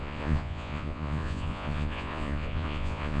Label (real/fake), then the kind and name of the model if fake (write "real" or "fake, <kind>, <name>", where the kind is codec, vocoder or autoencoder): fake, vocoder, Vocos